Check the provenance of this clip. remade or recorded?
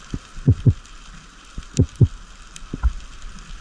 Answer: recorded